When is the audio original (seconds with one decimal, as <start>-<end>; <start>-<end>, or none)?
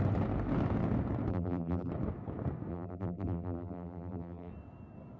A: 0.0-1.3; 1.9-2.7; 4.5-5.2